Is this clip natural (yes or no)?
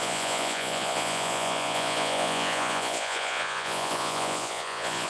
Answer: no